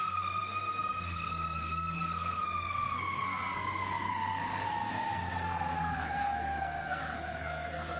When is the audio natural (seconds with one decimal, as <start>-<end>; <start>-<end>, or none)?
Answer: none